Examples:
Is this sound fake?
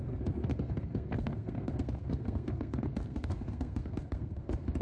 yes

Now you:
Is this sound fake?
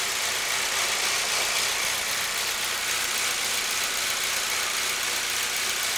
no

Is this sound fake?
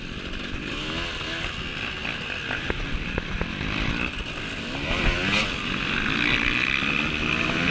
no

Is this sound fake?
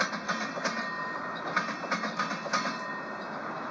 no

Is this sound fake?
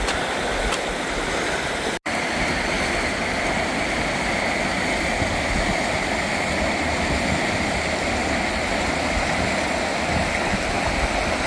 no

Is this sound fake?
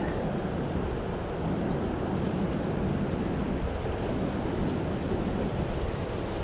no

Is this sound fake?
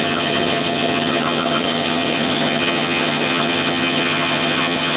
yes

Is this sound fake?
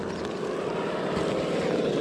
no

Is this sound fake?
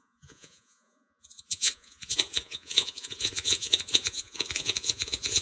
yes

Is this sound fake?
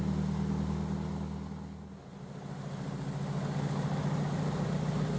no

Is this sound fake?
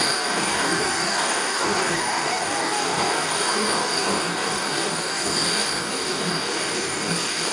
yes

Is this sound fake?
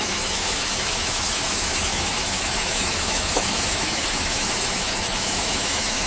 yes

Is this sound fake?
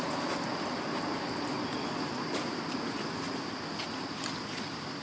no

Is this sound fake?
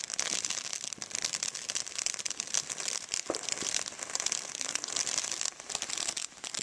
no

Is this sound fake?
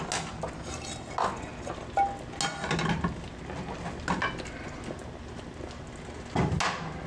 no